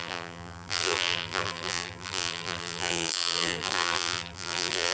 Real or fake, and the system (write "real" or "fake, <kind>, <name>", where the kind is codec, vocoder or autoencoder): fake, vocoder, BigVGAN v2